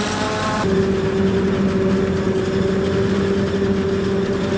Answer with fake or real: real